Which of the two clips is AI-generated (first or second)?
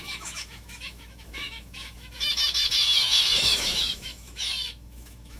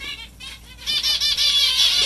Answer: first